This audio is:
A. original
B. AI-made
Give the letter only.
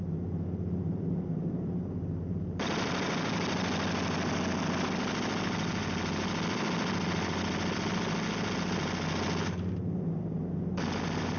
A